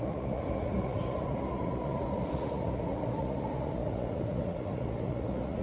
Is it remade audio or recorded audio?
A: remade